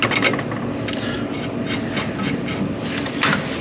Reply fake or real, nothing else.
real